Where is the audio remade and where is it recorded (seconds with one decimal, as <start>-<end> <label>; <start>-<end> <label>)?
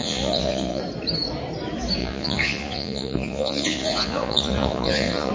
0.0-0.8 remade; 0.8-2.0 recorded; 2.0-5.3 remade